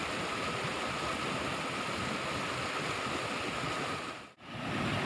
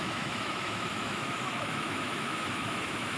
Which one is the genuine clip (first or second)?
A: first